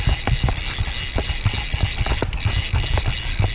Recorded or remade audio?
recorded